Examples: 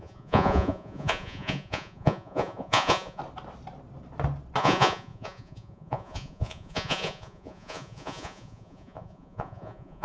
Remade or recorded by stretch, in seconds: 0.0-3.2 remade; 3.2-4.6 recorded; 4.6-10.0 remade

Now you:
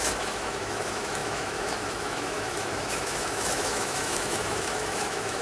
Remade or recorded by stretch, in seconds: 0.0-5.4 remade

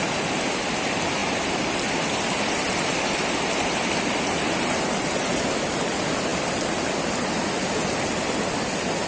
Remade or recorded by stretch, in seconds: 0.0-9.1 recorded

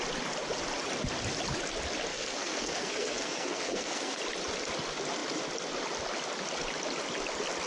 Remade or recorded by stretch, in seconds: 0.0-2.1 recorded; 2.1-4.2 remade; 4.2-7.7 recorded

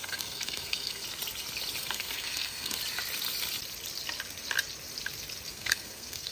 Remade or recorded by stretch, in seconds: 0.0-1.0 remade; 1.0-1.8 recorded; 1.8-2.8 remade; 2.8-5.5 recorded; 5.5-6.3 remade

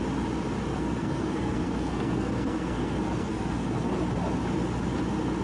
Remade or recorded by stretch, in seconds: 0.0-0.7 recorded; 0.7-3.9 remade; 3.9-5.4 recorded